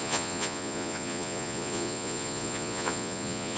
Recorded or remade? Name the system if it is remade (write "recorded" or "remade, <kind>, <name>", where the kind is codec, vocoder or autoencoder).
remade, vocoder, Vocos